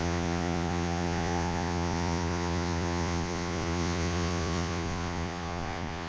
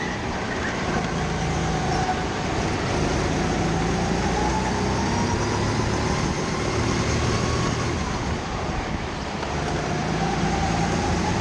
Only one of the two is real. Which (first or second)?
second